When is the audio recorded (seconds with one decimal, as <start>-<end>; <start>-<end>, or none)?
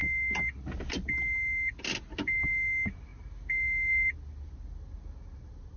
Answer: 0.0-5.8